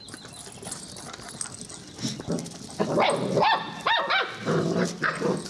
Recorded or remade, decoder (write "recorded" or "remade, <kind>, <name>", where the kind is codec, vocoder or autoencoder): recorded